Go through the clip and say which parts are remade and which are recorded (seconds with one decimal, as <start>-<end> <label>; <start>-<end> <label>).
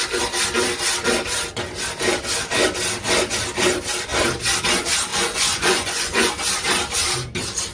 0.0-5.1 recorded; 5.1-6.3 remade; 6.3-7.7 recorded